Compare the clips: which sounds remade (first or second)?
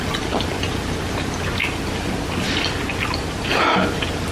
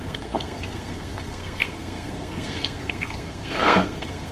second